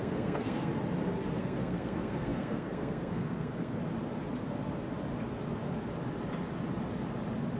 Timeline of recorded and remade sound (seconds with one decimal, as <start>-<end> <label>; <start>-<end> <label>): 0.0-0.7 remade; 0.7-1.4 recorded; 1.4-3.8 remade; 3.8-7.6 recorded